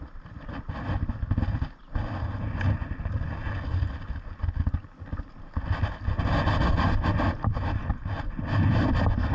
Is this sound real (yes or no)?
yes